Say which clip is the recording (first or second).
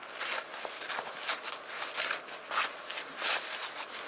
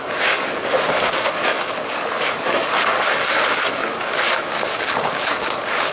first